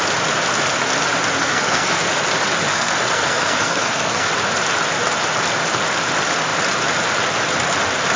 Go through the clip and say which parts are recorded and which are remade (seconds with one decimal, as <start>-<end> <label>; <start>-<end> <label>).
0.0-1.4 recorded; 1.4-2.1 remade; 2.1-2.7 recorded; 2.7-4.3 remade; 4.3-8.2 recorded